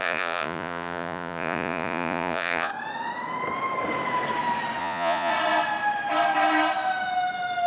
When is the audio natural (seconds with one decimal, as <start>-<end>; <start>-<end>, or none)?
2.7-4.8; 5.3-7.7